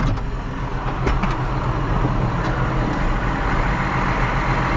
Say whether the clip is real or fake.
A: real